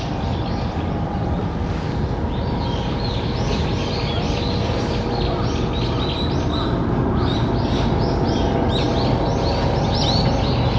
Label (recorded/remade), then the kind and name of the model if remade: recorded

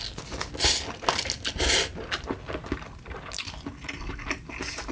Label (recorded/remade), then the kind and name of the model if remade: recorded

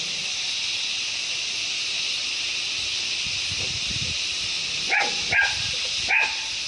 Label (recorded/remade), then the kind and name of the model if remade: recorded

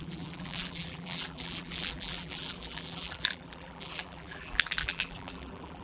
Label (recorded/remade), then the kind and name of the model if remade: remade, vocoder, BigVGAN v2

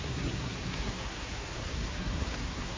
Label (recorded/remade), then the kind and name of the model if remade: remade, codec, SNAC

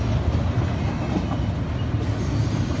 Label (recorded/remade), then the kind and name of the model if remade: recorded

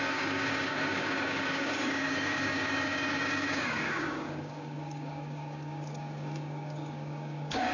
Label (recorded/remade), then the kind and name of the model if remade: remade, codec, DAC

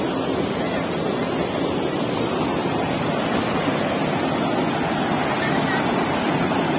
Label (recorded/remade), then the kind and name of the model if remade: recorded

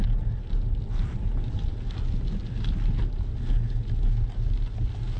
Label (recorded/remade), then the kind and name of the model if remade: recorded